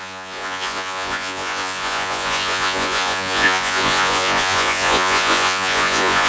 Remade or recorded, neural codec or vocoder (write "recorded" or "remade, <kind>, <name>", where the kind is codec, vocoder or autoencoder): remade, vocoder, Vocos